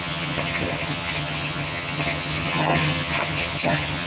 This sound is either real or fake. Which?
fake